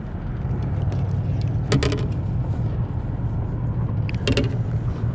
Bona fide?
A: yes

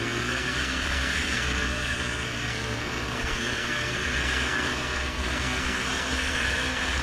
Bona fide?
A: no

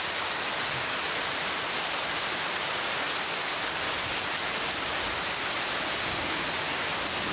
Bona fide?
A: yes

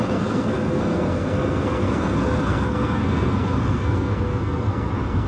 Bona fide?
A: no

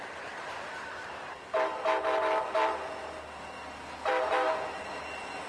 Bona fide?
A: yes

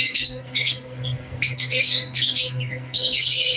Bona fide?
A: no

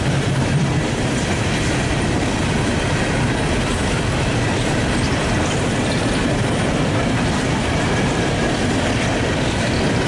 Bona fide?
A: yes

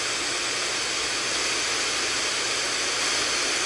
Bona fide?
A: yes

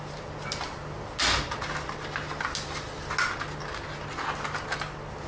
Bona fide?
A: yes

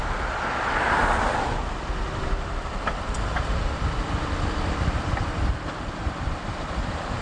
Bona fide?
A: yes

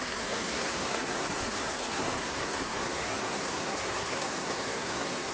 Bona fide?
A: no